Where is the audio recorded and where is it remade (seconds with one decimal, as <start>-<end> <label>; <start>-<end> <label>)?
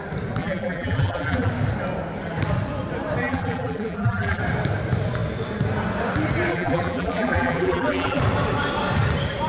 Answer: 0.0-0.4 recorded; 0.4-1.5 remade; 1.5-3.2 recorded; 3.2-4.4 remade; 4.4-6.5 recorded; 6.5-8.2 remade; 8.2-9.5 recorded